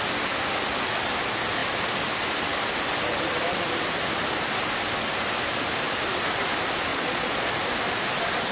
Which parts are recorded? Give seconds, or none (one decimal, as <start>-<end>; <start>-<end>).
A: 0.0-6.9; 7.5-8.5